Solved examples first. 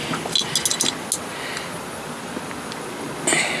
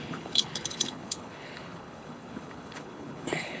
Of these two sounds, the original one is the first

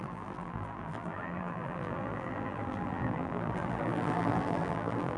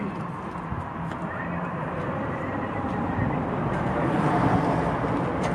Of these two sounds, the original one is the second